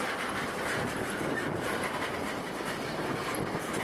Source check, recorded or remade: recorded